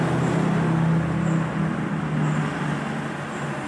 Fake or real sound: real